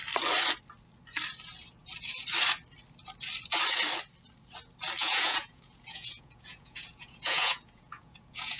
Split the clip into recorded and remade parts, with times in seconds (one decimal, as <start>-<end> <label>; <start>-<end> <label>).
0.0-5.0 recorded; 5.0-8.6 remade